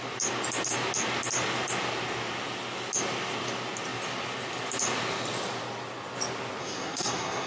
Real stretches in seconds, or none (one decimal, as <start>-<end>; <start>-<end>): 0.0-6.6